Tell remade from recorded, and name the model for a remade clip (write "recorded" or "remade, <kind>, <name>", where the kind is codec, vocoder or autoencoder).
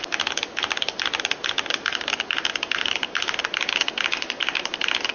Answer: recorded